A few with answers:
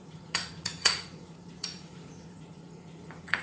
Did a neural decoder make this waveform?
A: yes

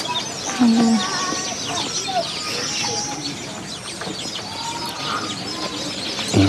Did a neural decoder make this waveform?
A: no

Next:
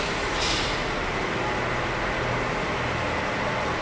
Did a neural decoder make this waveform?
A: no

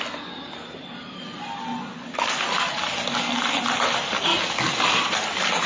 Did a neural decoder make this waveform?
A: no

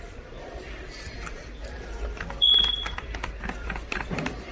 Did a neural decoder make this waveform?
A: yes